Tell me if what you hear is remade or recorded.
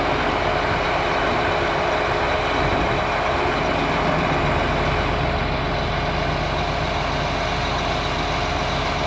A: recorded